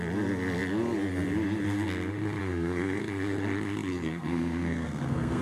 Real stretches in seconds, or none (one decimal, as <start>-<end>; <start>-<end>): 0.0-2.4; 3.0-3.9